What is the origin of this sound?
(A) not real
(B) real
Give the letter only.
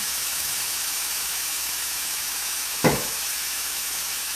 A